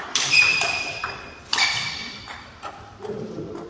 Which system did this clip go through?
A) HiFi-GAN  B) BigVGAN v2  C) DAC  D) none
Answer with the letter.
B